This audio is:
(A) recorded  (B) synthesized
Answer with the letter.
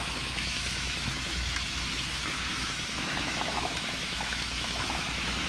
B